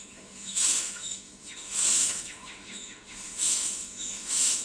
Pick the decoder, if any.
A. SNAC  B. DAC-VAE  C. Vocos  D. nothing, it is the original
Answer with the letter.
B